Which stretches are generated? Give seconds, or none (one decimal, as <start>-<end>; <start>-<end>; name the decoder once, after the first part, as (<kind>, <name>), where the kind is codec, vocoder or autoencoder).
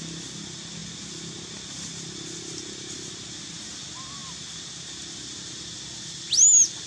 none